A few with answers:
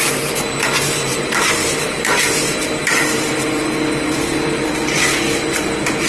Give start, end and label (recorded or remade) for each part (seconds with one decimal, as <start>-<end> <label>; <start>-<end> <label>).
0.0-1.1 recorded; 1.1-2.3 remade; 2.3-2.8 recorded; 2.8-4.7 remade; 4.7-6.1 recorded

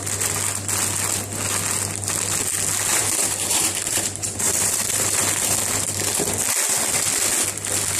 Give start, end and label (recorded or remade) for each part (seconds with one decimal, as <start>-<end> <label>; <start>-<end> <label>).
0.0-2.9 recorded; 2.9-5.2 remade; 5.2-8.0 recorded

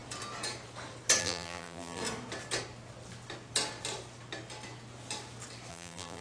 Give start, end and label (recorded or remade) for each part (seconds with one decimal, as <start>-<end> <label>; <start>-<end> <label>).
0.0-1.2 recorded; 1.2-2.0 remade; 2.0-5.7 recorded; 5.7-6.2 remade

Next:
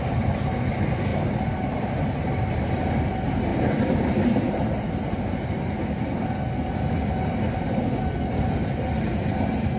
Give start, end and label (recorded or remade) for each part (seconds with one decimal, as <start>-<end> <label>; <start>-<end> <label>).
0.0-1.1 recorded; 1.1-2.7 remade; 2.7-3.5 recorded; 3.5-4.9 remade; 4.9-9.8 recorded

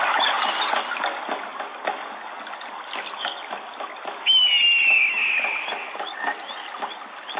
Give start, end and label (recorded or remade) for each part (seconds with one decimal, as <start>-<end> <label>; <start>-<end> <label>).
0.0-7.4 recorded

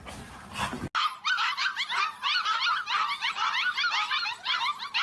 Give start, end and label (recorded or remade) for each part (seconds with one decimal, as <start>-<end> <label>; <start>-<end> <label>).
0.0-5.0 recorded

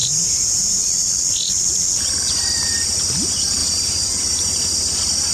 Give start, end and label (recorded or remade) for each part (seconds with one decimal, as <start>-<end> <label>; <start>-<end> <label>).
0.0-0.8 remade; 0.8-3.6 recorded; 3.6-4.2 remade; 4.2-5.3 recorded